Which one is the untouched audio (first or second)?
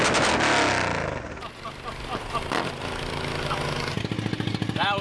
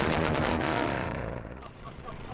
first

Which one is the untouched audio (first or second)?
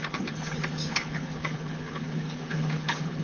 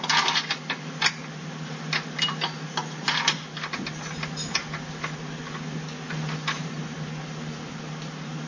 second